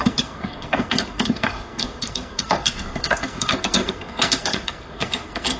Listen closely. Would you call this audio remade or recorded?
remade